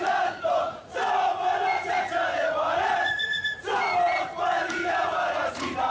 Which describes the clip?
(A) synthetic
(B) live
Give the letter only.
A